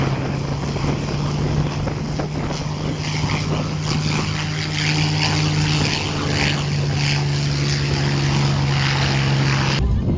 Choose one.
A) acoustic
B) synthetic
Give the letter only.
A